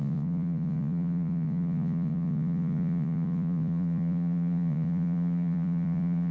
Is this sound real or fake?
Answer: fake